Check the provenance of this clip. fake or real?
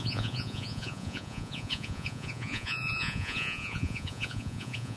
fake